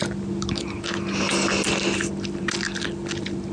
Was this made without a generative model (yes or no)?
yes